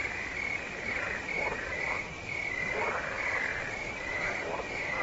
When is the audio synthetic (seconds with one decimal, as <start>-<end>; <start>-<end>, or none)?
none